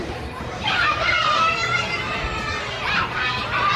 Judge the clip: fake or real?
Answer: real